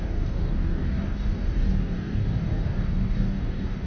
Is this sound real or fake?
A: fake